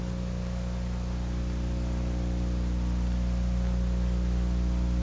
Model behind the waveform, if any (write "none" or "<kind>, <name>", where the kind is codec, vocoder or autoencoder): none